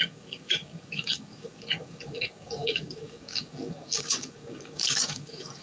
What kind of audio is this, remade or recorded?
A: remade